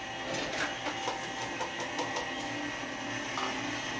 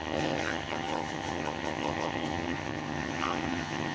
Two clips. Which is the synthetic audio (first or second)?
second